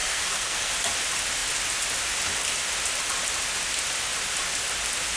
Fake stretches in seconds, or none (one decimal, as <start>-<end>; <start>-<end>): 0.0-0.7